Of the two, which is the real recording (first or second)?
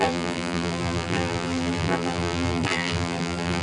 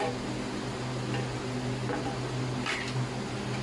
second